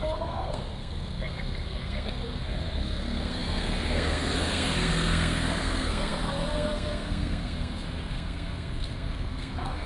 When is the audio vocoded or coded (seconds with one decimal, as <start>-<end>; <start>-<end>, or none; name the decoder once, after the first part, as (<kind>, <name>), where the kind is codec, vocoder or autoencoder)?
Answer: 0.0-9.9 (codec, SNAC)